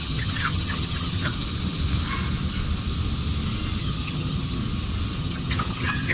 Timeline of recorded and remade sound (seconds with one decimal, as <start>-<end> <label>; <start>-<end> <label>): 0.0-1.4 remade; 1.4-3.8 recorded; 3.8-4.6 remade; 4.6-5.2 recorded; 5.2-6.1 remade